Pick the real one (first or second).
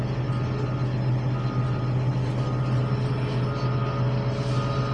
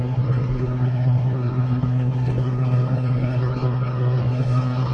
first